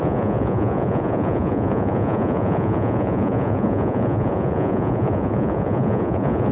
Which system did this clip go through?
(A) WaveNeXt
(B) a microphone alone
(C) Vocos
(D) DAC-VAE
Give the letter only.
C